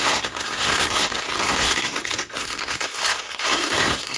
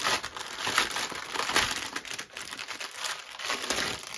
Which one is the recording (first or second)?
second